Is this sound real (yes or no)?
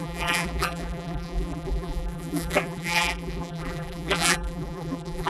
no